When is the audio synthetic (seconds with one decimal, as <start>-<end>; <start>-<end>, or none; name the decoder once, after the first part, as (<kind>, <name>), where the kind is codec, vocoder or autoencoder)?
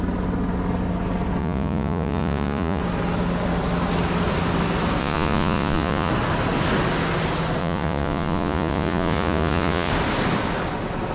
1.4-2.8 (vocoder, Vocos); 5.0-6.1; 7.6-9.9